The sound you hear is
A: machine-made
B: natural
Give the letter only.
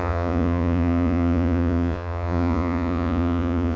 A